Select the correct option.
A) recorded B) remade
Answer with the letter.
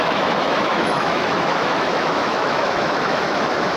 B